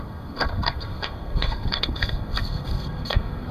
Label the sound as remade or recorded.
remade